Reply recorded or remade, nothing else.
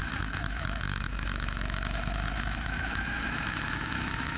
remade